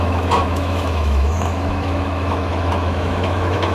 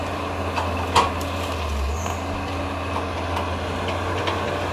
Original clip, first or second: second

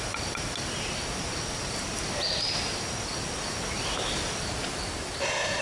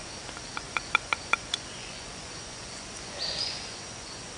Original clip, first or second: first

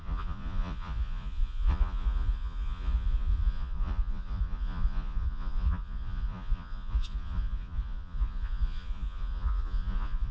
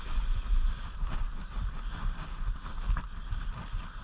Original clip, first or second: second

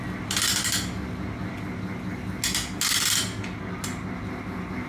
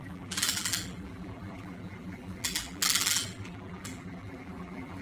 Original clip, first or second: first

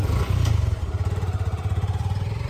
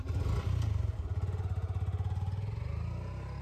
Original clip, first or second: second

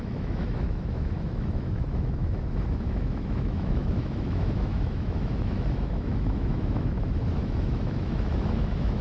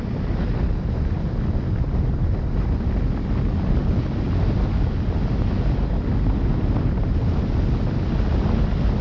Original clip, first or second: second